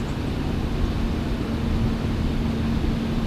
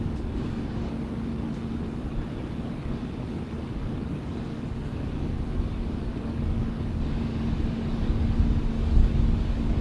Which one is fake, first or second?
second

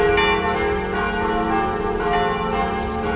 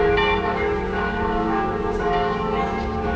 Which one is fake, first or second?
second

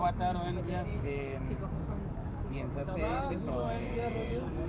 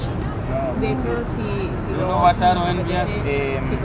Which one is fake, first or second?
first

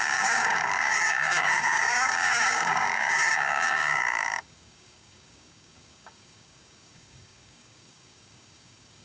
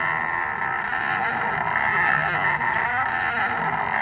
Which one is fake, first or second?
first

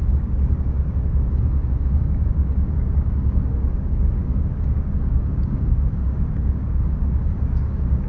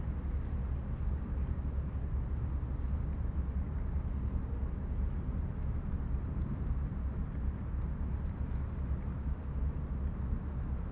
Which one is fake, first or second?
first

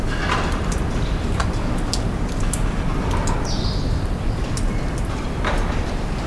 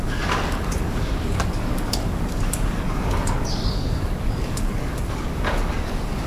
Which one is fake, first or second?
second